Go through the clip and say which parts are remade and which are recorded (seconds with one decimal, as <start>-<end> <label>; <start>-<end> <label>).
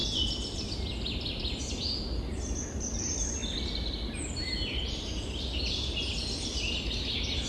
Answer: 0.0-7.5 recorded